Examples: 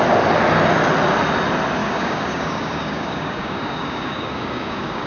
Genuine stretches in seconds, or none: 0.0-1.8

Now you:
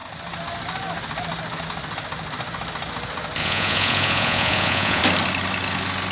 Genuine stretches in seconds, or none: 0.0-3.4; 5.0-6.1

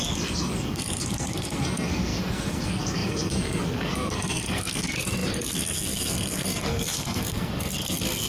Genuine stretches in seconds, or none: none

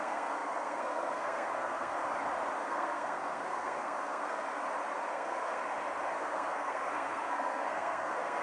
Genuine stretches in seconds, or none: 1.9-2.6; 4.6-5.1; 5.6-6.1

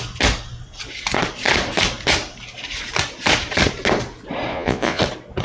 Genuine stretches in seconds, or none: 0.0-4.5; 5.0-5.4

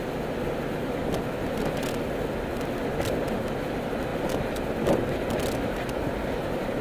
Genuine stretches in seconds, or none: 0.0-6.8